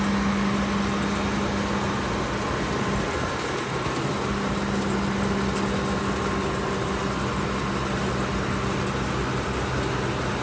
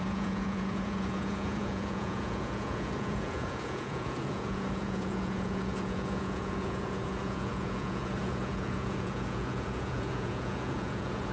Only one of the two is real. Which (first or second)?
first